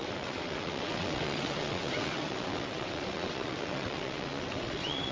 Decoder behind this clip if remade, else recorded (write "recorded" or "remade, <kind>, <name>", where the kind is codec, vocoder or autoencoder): remade, vocoder, WaveNeXt